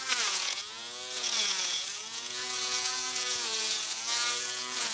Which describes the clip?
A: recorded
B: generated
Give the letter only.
B